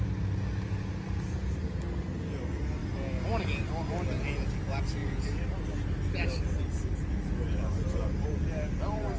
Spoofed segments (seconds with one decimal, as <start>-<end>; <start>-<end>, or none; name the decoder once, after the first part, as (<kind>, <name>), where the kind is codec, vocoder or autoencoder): none